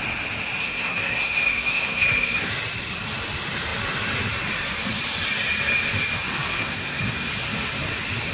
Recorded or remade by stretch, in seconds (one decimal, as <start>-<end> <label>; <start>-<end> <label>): 0.0-0.6 recorded; 0.6-2.5 remade; 2.5-6.5 recorded; 6.5-7.3 remade; 7.3-8.3 recorded